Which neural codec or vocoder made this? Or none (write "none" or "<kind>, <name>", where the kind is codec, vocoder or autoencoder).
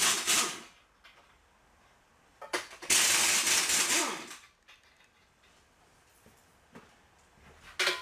none